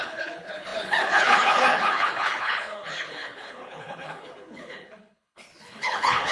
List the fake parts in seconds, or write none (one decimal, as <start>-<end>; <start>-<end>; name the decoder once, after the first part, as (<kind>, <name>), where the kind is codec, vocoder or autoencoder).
0.0-6.3 (codec, HILCodec)